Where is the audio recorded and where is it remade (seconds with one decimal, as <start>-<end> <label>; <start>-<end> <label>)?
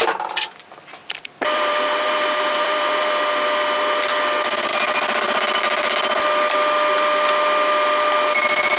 0.0-1.0 recorded; 1.0-3.1 remade; 3.1-4.7 recorded; 4.7-5.6 remade; 5.6-8.8 recorded